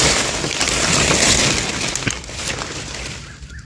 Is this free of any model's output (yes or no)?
yes